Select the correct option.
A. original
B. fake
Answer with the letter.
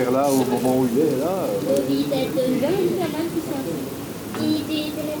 A